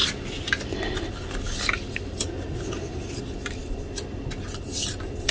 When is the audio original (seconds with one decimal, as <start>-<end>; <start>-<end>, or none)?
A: 0.0-5.3